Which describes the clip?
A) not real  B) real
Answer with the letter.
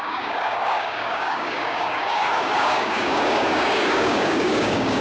A